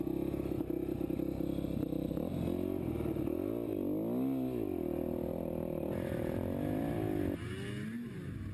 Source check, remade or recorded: recorded